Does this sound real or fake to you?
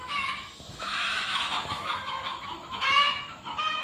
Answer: fake